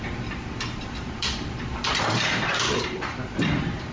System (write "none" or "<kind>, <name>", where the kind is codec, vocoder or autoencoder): vocoder, BigVGAN v2